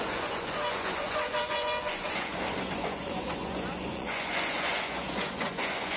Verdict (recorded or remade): remade